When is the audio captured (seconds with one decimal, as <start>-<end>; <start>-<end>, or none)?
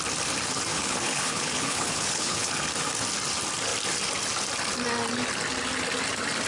0.0-0.7; 2.5-6.5